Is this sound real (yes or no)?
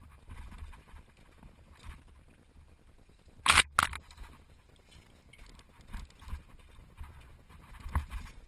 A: yes